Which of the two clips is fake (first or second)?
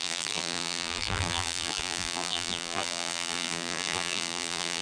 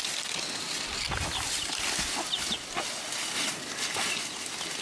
first